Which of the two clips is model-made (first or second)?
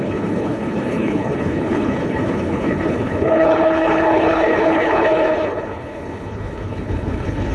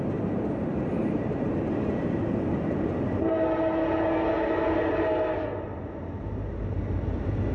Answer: first